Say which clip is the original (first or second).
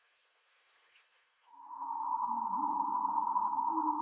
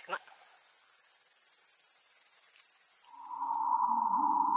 second